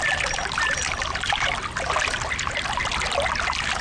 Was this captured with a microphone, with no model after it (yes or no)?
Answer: yes